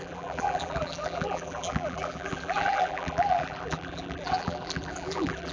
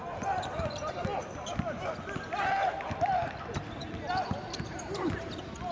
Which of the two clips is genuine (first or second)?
second